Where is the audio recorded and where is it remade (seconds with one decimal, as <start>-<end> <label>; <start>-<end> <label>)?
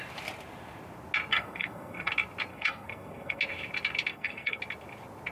0.0-1.3 recorded; 1.3-2.1 remade; 2.1-2.5 recorded; 2.5-3.4 remade; 3.4-4.1 recorded; 4.1-4.6 remade; 4.6-5.3 recorded